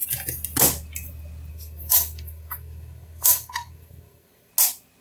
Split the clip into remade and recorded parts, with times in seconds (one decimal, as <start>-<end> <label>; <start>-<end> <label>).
0.0-1.5 recorded; 1.5-4.5 remade; 4.5-5.0 recorded